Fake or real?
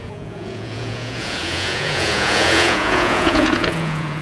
fake